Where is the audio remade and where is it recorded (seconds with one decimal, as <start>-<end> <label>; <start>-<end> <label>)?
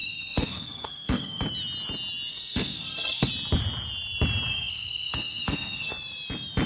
0.0-1.4 remade; 1.4-2.3 recorded; 2.3-3.3 remade; 3.3-4.5 recorded; 4.5-5.9 remade; 5.9-6.7 recorded